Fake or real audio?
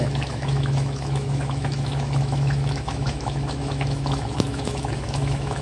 fake